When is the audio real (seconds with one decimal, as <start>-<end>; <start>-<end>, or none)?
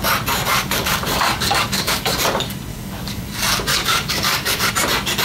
0.0-0.5; 2.1-2.7; 3.3-3.7; 4.7-5.2